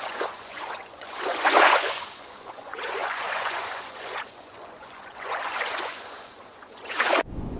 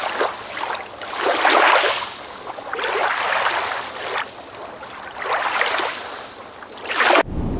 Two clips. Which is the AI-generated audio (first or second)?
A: first